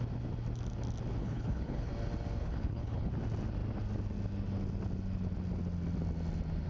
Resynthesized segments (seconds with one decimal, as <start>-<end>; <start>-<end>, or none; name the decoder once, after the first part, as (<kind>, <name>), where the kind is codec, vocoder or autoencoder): 1.2-1.9 (codec, HILCodec); 2.4-3.1